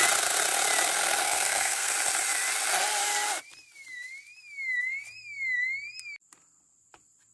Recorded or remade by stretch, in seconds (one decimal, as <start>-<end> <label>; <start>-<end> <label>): 0.0-1.2 recorded; 1.2-1.9 remade; 1.9-7.3 recorded